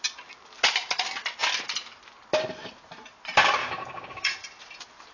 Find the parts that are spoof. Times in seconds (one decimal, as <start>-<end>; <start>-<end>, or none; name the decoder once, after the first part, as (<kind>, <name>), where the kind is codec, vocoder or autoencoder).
3.6-4.3 (codec, DAC)